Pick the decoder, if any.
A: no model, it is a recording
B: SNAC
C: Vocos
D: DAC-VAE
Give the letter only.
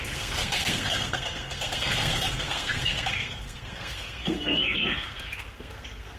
B